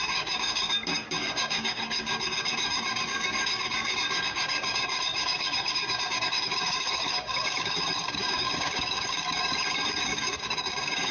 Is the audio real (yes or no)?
no